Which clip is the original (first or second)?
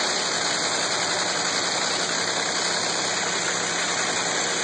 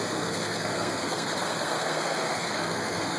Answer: first